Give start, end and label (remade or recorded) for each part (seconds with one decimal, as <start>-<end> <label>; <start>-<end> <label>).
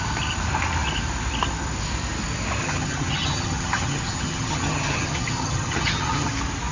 0.0-2.6 recorded; 2.6-6.3 remade; 6.3-6.7 recorded